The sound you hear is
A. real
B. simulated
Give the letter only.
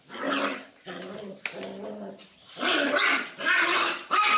A